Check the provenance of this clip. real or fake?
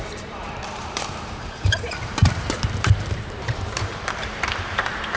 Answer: fake